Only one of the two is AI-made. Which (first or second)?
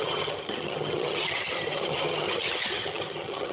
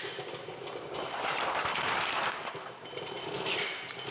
first